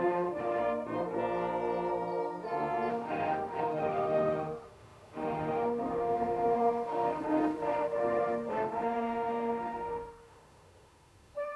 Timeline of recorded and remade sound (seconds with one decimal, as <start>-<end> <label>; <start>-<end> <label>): 0.0-0.6 remade; 0.6-2.9 recorded; 2.9-11.6 remade